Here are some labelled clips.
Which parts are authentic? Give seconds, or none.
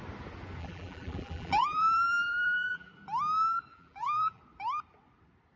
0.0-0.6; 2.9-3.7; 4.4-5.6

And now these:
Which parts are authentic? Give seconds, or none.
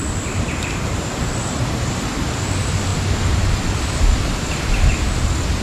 0.0-5.6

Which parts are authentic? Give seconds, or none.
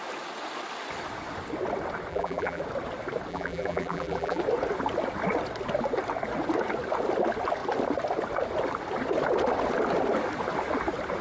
0.0-2.1; 2.6-3.3; 4.4-11.2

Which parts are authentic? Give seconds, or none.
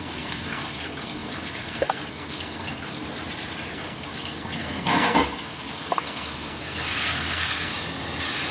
3.0-3.7; 7.7-8.5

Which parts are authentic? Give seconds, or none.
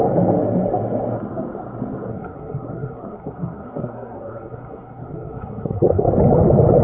0.0-2.1; 6.1-6.8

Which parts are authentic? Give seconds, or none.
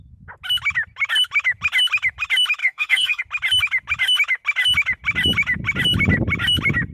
0.0-2.6; 3.2-6.9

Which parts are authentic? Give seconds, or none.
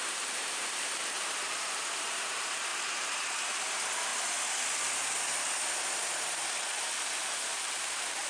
4.1-7.2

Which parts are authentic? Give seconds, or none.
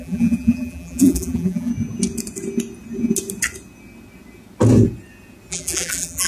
1.7-5.5